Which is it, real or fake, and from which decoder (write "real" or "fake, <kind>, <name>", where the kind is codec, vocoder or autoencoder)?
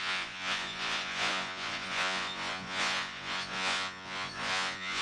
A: fake, vocoder, Vocos